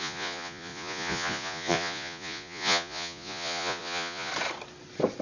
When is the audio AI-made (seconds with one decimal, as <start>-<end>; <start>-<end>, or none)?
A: 0.0-4.3